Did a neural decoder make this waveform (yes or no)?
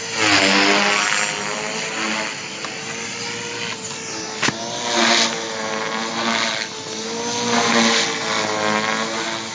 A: no